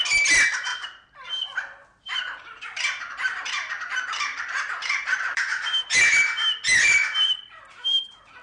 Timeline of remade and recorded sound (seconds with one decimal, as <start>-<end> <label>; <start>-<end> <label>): 0.0-1.8 recorded; 1.8-6.0 remade; 6.0-8.4 recorded